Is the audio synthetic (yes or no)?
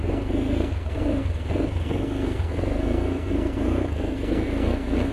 yes